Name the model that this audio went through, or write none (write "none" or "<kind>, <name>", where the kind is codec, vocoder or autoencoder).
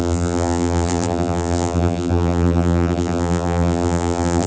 vocoder, BigVGAN v2